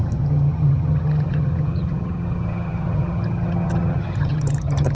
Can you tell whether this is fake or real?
fake